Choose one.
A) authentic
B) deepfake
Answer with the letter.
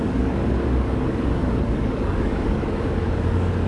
B